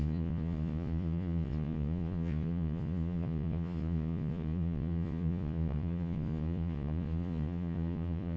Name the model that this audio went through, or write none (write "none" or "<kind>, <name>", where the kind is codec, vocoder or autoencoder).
vocoder, Vocos